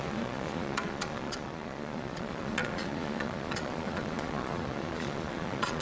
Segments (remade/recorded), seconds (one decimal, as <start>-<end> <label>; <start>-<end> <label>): 0.0-5.8 remade